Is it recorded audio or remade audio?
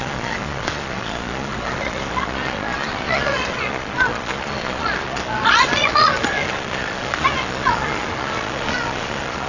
remade